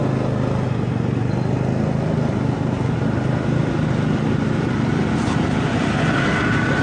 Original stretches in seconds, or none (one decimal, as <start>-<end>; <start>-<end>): 0.0-6.8